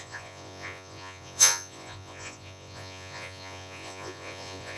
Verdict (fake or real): fake